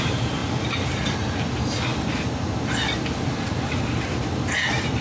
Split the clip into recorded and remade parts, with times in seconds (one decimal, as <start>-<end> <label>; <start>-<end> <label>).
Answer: 0.0-0.4 remade; 0.4-3.4 recorded; 3.4-5.0 remade